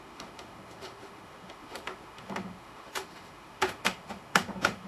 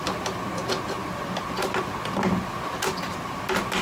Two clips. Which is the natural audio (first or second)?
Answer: second